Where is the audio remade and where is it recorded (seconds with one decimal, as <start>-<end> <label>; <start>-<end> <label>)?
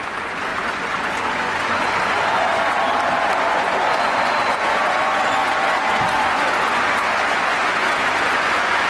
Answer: 0.0-8.9 remade